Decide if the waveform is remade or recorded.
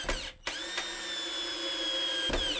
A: recorded